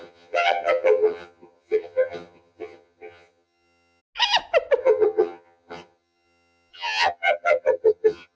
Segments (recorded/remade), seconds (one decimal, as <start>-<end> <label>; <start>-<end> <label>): 0.0-4.0 remade; 4.0-4.8 recorded; 4.8-8.4 remade